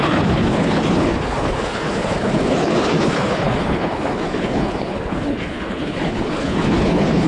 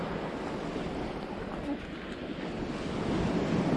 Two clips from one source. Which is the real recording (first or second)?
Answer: second